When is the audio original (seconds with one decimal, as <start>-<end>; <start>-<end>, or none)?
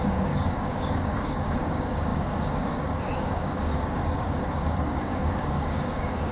none